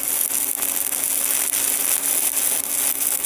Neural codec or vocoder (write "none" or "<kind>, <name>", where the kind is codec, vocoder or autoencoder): none